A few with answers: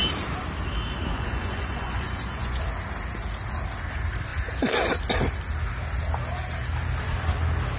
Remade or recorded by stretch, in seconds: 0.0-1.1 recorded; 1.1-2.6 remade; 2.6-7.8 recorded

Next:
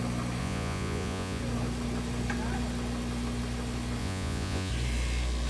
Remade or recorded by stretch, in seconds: 0.0-0.4 recorded; 0.4-1.4 remade; 1.4-4.0 recorded; 4.0-4.7 remade; 4.7-5.5 recorded

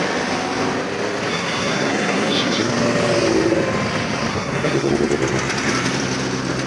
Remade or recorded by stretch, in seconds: 0.0-1.3 recorded; 1.3-2.7 remade; 2.7-4.3 recorded; 4.3-4.9 remade; 4.9-6.7 recorded